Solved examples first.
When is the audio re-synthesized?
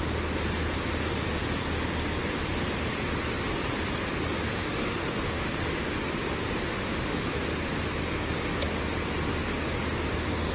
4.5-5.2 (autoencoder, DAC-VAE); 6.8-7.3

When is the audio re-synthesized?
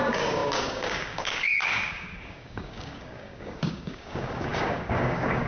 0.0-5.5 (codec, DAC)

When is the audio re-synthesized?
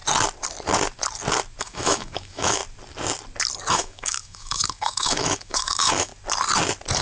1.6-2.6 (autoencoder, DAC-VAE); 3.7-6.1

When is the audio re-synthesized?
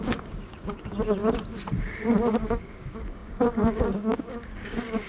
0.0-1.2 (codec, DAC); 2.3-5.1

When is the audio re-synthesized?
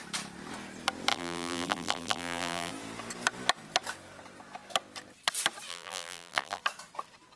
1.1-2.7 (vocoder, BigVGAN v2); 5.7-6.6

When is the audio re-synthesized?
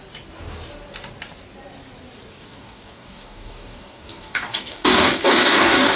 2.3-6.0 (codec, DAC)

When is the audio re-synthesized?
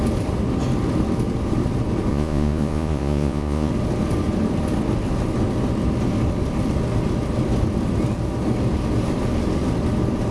2.1-3.7 (vocoder, Vocos)